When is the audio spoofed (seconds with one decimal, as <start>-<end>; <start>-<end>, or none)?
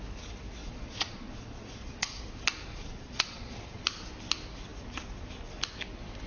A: 0.6-2.2; 2.7-3.8